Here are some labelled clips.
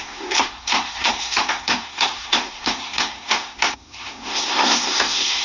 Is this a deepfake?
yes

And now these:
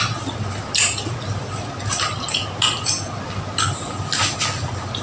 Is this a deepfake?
no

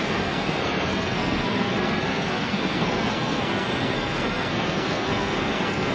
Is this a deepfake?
yes